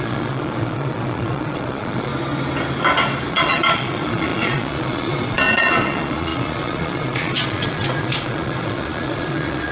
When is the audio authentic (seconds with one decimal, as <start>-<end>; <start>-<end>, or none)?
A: 2.1-3.3